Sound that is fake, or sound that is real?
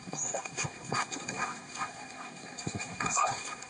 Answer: fake